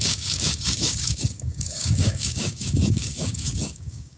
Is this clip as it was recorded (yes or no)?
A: no